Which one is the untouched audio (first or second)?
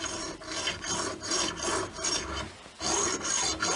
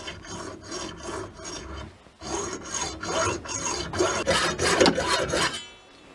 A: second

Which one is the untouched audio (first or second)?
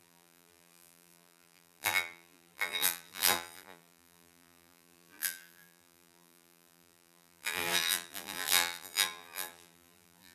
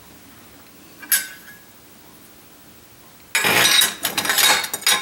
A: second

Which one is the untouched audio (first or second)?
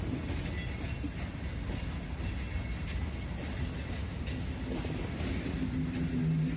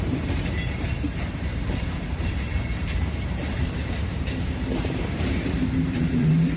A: first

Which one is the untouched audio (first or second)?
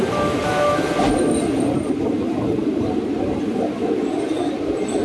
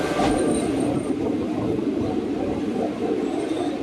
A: first